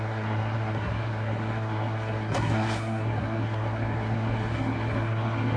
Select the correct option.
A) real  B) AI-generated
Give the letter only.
B